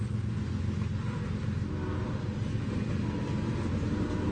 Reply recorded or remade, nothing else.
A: recorded